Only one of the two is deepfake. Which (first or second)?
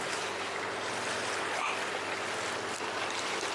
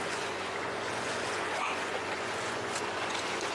second